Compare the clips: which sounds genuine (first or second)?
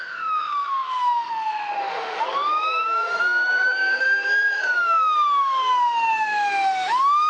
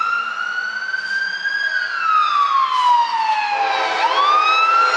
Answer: second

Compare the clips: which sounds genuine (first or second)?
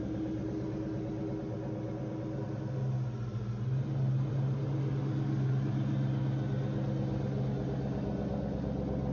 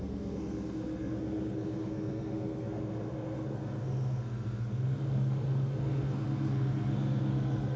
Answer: first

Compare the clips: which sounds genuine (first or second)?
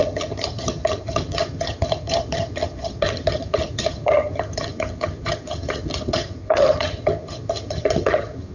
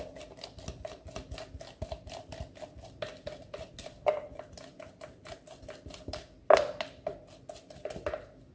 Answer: second